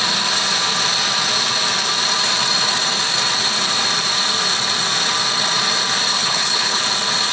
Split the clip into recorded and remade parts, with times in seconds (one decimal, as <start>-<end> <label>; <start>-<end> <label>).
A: 0.0-6.1 recorded; 6.1-6.8 remade; 6.8-7.3 recorded